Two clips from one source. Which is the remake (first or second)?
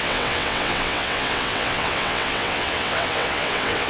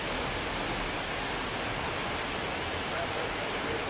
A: first